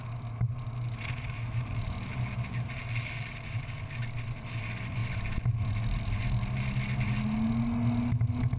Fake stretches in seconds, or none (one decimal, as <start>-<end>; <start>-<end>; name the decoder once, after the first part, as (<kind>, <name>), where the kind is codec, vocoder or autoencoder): none